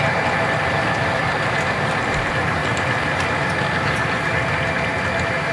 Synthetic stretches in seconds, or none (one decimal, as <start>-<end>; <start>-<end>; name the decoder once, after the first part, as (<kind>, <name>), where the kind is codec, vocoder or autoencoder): none